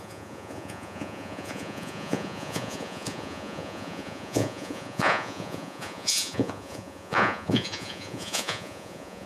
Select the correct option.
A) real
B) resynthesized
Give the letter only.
B